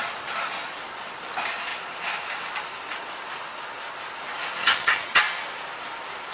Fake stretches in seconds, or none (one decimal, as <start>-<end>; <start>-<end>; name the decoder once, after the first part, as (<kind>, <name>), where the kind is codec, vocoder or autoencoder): 4.6-5.2 (vocoder, HiFi-GAN)